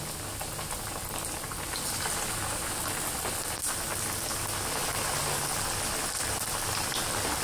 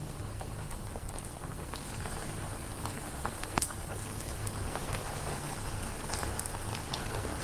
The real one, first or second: first